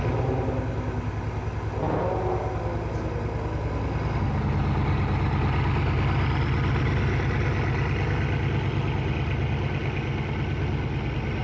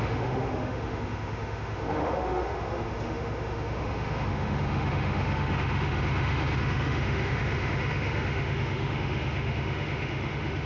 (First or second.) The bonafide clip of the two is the first